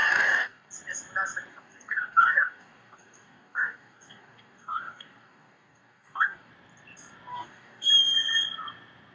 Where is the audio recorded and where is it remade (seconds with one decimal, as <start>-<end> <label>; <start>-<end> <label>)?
0.0-0.7 remade; 0.7-1.5 recorded; 1.5-6.5 remade; 6.5-7.3 recorded; 7.3-7.9 remade; 7.9-9.1 recorded